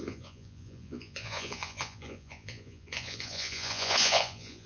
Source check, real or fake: fake